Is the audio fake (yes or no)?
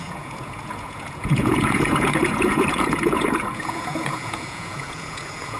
yes